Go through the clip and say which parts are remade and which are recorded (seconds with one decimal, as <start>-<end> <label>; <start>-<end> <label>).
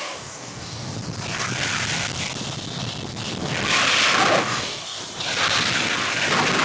0.0-0.9 remade; 0.9-4.4 recorded; 4.4-5.0 remade; 5.0-6.6 recorded